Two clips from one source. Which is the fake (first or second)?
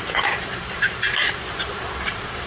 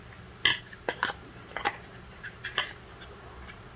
first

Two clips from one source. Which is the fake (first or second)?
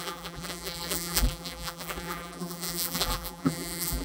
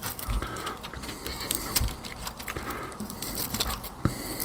first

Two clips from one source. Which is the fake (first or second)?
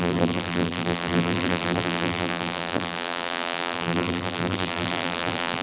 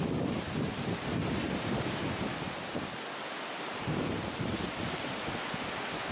first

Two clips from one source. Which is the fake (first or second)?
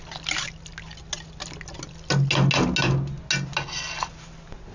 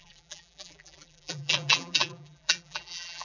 second